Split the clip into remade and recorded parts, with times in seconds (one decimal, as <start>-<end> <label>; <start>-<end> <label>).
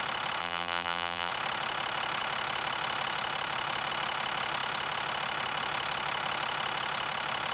0.0-0.4 recorded; 0.4-1.3 remade; 1.3-7.5 recorded